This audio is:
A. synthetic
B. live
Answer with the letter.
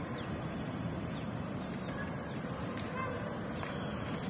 A